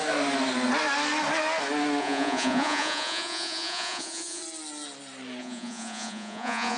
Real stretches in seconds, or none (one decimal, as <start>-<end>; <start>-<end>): 0.0-2.0; 4.4-5.4